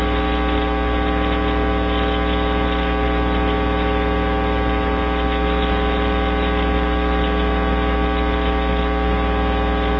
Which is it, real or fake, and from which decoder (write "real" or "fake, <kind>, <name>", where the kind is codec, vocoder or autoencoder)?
real